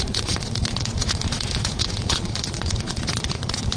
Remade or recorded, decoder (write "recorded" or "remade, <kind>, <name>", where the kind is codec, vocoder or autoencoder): remade, vocoder, Vocos